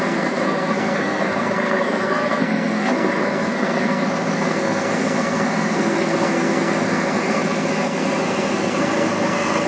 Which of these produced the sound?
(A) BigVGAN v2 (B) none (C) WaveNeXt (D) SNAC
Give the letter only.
D